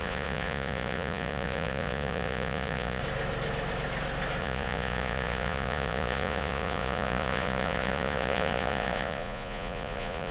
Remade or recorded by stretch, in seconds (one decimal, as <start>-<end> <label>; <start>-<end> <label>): 0.0-3.0 remade; 3.0-4.4 recorded; 4.4-10.3 remade